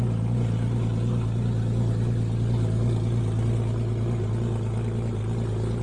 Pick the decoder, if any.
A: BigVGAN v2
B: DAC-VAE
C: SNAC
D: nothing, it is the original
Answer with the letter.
D